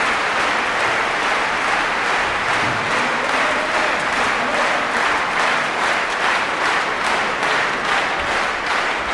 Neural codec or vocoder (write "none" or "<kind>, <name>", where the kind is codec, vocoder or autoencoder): none